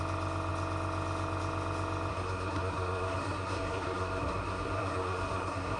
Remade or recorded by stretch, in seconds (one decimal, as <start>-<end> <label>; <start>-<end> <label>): 0.0-2.1 recorded; 2.1-5.8 remade

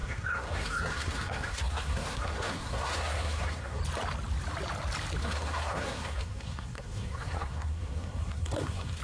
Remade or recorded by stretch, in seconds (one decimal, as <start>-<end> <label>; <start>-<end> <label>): 0.0-3.8 remade; 3.8-5.2 recorded; 5.2-9.0 remade

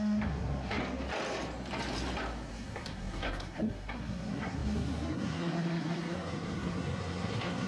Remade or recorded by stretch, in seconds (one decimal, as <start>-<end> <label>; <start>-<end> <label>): 0.0-0.8 remade; 0.8-2.5 recorded; 2.5-7.7 remade

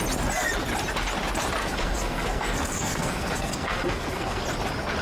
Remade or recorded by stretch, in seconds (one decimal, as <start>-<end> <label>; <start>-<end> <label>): 0.0-1.6 recorded; 1.6-4.4 remade; 4.4-5.0 recorded

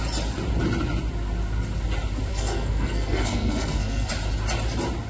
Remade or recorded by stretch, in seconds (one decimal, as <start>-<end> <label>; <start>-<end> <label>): 0.0-2.3 recorded; 2.3-4.1 remade; 4.1-5.1 recorded

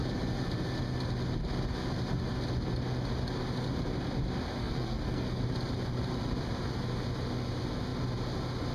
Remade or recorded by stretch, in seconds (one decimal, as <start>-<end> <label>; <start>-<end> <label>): 0.0-4.6 recorded; 4.6-5.4 remade; 5.4-8.7 recorded

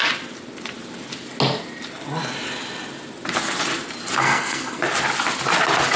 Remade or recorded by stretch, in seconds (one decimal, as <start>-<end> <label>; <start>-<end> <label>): 0.0-4.2 recorded; 4.2-4.8 remade; 4.8-6.0 recorded